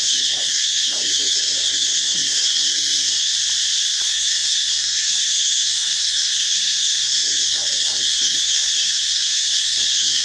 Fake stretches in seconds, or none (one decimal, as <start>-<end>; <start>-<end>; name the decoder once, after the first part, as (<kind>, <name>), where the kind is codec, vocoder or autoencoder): 0.0-3.3 (codec, SNAC); 3.8-10.2